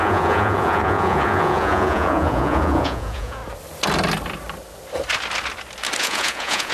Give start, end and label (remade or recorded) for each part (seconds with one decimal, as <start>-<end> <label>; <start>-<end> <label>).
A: 0.0-3.4 remade; 3.4-6.0 recorded; 6.0-6.7 remade